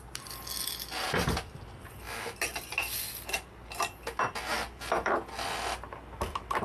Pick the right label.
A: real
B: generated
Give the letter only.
A